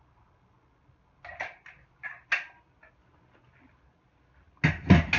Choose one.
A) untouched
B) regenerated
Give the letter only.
A